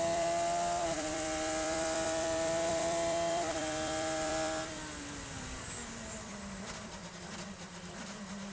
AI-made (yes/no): yes